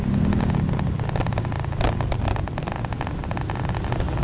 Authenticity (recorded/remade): recorded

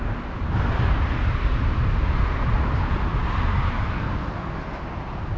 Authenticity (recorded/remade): recorded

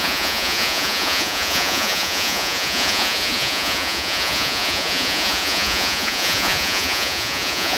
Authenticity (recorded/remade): remade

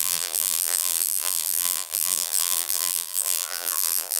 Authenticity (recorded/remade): remade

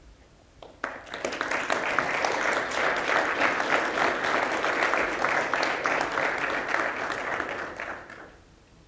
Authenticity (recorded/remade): recorded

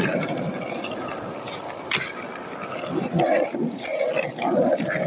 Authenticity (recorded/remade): recorded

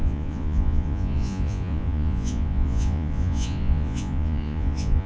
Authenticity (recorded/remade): remade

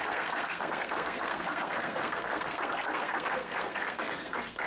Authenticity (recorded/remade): remade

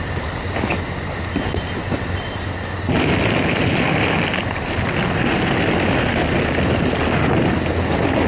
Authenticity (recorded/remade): recorded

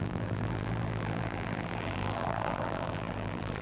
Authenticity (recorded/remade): remade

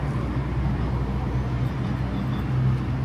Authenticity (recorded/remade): recorded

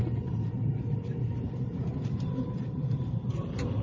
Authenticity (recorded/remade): remade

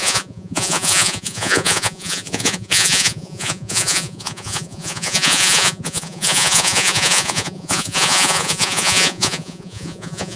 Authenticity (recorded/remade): remade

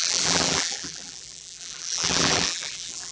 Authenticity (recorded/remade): remade